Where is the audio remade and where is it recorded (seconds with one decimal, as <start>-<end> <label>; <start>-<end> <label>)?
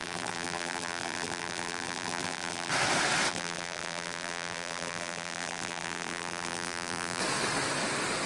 0.0-2.7 remade; 2.7-3.3 recorded; 3.3-7.2 remade; 7.2-8.3 recorded